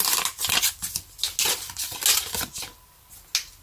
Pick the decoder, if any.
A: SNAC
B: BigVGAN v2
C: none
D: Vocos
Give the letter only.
C